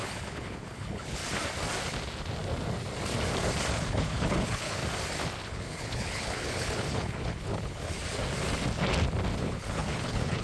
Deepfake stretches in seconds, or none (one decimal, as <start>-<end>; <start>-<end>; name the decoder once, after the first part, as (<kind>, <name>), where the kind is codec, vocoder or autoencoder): 0.0-1.2 (codec, HILCodec); 3.7-4.8; 5.5-8.0; 9.4-10.4